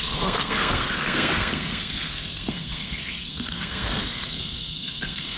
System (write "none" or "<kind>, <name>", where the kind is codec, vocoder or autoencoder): codec, SNAC